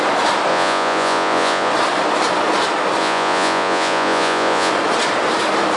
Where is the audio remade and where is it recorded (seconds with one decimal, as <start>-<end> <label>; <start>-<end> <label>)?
0.0-0.5 recorded; 0.5-1.7 remade; 1.7-3.0 recorded; 3.0-4.7 remade; 4.7-5.8 recorded